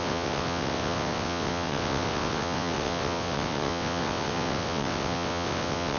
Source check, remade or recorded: remade